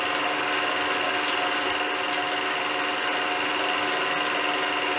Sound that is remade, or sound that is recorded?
recorded